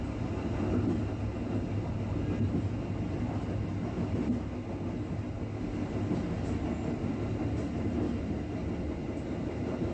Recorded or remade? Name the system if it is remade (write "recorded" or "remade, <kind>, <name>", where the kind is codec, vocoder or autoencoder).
recorded